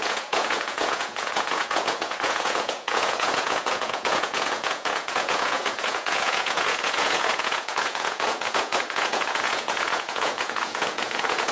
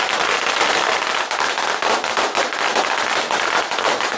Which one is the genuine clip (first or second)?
second